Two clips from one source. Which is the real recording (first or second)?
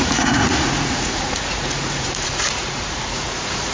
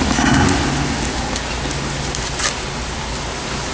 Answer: second